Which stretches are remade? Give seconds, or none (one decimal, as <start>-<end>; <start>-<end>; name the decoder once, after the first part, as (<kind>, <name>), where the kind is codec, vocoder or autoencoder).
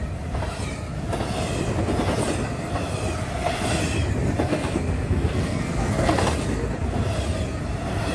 4.5-6.2 (codec, SNAC)